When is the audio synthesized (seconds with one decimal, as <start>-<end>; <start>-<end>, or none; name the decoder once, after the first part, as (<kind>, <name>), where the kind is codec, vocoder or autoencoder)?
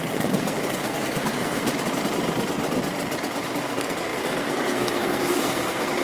0.0-1.7 (codec, SNAC); 3.6-6.0